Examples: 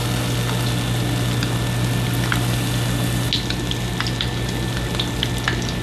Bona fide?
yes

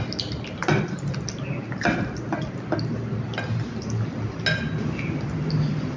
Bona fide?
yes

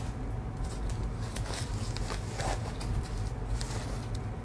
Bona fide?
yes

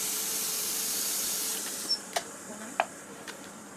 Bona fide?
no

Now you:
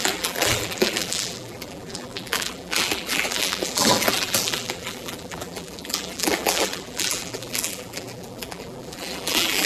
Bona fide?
no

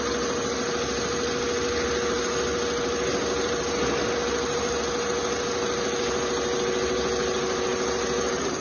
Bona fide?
yes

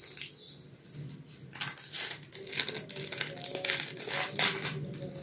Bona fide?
yes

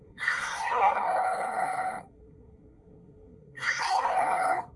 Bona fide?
no